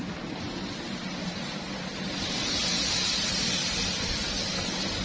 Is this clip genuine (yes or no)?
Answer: yes